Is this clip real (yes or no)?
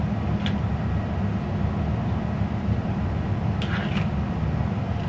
yes